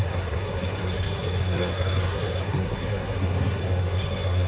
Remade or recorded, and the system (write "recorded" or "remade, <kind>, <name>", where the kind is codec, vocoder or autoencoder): remade, codec, SNAC